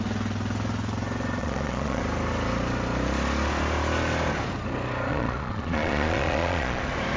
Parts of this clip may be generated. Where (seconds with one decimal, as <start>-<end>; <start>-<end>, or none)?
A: 1.4-2.0; 5.1-6.8